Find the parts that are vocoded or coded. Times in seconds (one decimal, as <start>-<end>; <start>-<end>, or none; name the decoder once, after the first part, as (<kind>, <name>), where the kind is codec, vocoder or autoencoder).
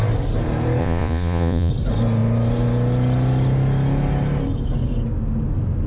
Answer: 0.8-1.7 (vocoder, Vocos)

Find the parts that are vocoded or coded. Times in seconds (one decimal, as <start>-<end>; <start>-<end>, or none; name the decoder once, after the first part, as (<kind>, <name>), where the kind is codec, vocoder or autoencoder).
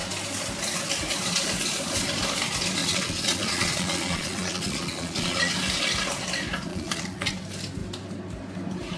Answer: 2.8-5.5 (vocoder, Vocos); 6.7-7.3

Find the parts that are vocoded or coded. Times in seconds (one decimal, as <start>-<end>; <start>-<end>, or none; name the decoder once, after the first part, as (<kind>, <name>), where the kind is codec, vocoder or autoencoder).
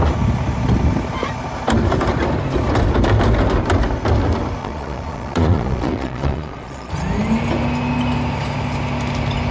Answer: 4.6-6.9 (vocoder, Vocos)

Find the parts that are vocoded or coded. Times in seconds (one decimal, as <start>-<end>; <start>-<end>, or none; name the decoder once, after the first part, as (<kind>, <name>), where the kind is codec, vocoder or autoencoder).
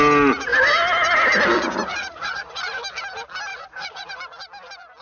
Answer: 1.9-2.8 (vocoder, Vocos); 3.5-4.1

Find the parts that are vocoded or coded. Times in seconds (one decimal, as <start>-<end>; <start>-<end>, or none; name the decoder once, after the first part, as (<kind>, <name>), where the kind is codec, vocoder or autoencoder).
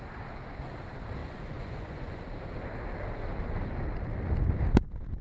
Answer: 1.2-2.2 (vocoder, Vocos)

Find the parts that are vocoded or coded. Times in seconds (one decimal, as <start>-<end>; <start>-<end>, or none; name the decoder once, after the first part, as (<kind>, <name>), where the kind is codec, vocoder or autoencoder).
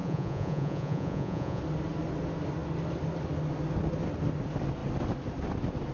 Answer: 0.0-1.6 (vocoder, Vocos)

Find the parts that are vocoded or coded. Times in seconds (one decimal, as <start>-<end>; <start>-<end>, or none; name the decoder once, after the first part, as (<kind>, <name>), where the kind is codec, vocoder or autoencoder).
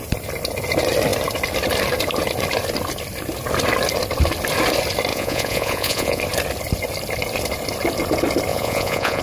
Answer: 5.1-6.2 (vocoder, Vocos); 8.5-9.2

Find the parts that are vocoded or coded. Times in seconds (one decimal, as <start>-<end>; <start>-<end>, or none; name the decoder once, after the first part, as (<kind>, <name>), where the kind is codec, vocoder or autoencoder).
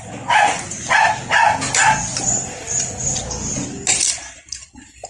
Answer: none